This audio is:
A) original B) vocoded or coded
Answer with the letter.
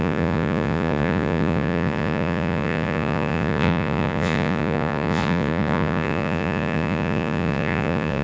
B